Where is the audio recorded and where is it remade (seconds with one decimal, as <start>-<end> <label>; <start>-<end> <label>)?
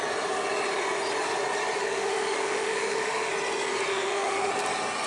0.0-1.8 recorded; 1.8-3.3 remade; 3.3-3.9 recorded; 3.9-4.5 remade; 4.5-5.1 recorded